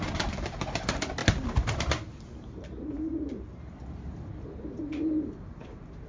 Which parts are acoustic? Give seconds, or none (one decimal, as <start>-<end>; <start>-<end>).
0.0-6.1